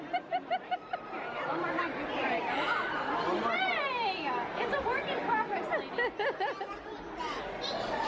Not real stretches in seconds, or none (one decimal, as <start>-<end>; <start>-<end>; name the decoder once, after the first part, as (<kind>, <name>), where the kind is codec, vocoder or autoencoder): 2.2-3.8 (vocoder, BigVGAN v2)